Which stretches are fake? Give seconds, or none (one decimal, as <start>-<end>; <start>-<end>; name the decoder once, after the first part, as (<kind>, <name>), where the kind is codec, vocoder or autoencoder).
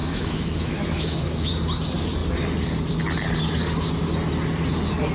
0.0-1.5 (autoencoder, DAC-VAE)